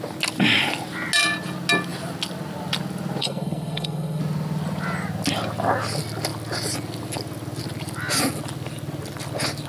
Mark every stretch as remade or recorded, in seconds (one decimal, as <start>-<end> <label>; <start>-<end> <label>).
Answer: 0.0-3.2 recorded; 3.2-4.2 remade; 4.2-9.7 recorded

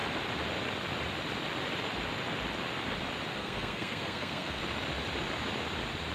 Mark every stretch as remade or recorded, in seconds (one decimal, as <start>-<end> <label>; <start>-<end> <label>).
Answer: 0.0-3.3 recorded; 3.3-4.6 remade; 4.6-6.1 recorded

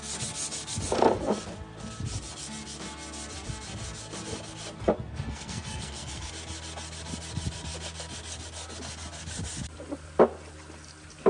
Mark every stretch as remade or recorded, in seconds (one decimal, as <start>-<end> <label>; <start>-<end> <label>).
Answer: 0.0-5.1 recorded; 5.1-6.3 remade; 6.3-11.3 recorded